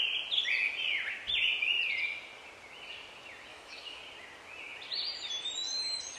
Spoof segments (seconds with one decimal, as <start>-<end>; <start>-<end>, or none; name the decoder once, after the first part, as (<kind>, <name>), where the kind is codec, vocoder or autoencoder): 3.5-4.0 (autoencoder, DAC-VAE)